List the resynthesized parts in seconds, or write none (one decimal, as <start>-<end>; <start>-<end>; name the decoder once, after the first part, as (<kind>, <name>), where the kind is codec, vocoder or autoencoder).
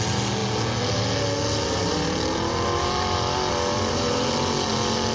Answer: none